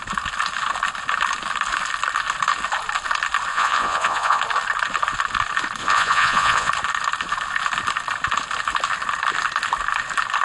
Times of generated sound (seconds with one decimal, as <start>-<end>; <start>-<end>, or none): 3.5-4.4; 5.8-6.7